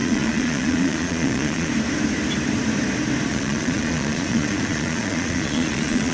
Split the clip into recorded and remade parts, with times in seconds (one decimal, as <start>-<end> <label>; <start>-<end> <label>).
0.0-1.7 remade; 1.7-3.3 recorded; 3.3-6.1 remade